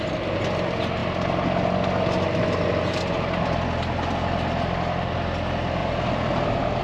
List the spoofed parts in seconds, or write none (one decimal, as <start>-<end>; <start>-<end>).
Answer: 5.8-6.8